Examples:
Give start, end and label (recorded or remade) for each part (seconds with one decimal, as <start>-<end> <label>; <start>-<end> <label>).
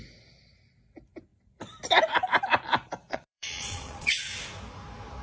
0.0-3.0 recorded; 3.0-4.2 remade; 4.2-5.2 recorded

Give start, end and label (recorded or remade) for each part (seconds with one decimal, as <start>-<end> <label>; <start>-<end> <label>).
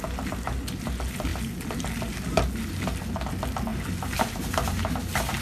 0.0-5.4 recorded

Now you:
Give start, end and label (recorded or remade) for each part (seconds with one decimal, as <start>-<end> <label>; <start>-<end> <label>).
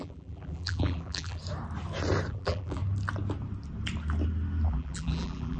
0.0-1.4 remade; 1.4-2.3 recorded; 2.3-2.8 remade; 2.8-4.7 recorded; 4.7-5.6 remade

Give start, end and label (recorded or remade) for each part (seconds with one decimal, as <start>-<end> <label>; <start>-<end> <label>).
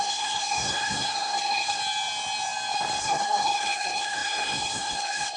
0.0-1.8 remade; 1.8-3.0 recorded; 3.0-5.4 remade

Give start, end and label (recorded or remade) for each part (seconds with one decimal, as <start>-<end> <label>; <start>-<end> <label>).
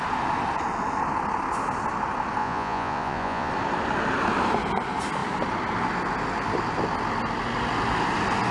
0.0-2.4 recorded; 2.4-3.5 remade; 3.5-8.5 recorded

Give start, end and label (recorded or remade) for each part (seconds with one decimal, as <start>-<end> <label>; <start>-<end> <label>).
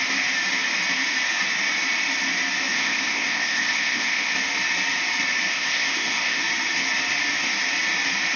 0.0-2.7 recorded; 2.7-4.3 remade; 4.3-5.5 recorded; 5.5-6.4 remade; 6.4-8.4 recorded